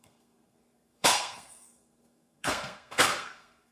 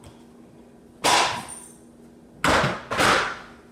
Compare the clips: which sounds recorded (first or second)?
second